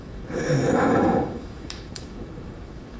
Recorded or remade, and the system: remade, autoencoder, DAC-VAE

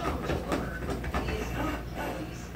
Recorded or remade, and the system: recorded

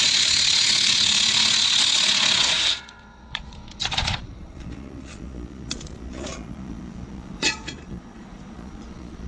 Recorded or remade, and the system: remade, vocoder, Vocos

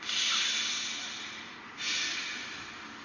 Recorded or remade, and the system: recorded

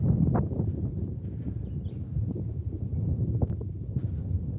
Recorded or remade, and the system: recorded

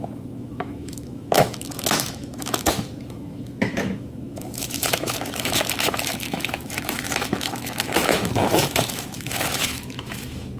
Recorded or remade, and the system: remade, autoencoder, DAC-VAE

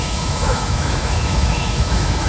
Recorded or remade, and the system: remade, autoencoder, DAC-VAE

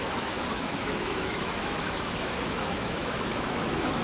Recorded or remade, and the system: remade, autoencoder, DAC-VAE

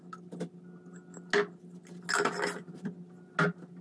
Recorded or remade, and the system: recorded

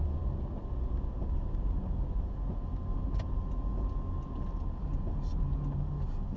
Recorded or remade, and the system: recorded